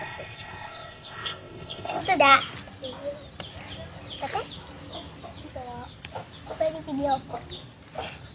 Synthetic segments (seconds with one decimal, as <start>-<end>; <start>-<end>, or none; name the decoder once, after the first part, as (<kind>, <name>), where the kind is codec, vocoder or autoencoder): 0.0-2.0 (codec, ZipCodec)